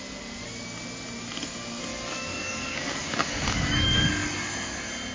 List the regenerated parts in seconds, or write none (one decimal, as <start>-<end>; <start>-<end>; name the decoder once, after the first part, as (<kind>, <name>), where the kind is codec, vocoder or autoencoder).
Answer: 1.9-4.1 (codec, DAC)